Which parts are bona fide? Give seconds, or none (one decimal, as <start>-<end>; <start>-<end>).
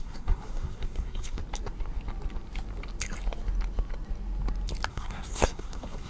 1.4-4.9